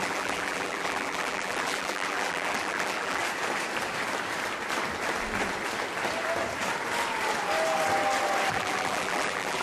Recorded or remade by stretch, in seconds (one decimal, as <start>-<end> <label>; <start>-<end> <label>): 0.0-3.2 remade; 3.2-8.5 recorded; 8.5-9.6 remade